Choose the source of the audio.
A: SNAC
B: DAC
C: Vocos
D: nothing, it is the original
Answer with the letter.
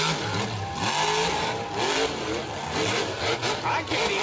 D